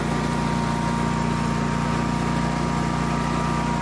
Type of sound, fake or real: real